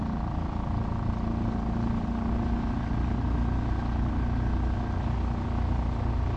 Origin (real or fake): real